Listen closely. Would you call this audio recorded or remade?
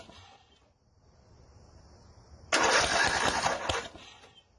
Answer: recorded